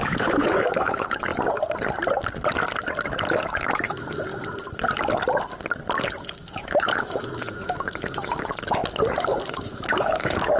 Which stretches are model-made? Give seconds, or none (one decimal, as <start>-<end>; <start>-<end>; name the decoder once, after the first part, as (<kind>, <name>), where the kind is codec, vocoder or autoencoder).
0.0-1.3 (autoencoder, DAC-VAE); 3.2-4.3; 6.4-8.8; 9.5-10.6